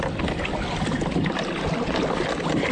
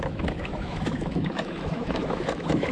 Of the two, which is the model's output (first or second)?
second